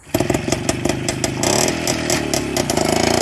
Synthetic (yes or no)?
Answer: no